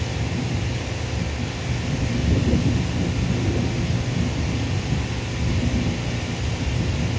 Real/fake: real